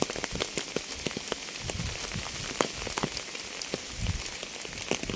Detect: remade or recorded recorded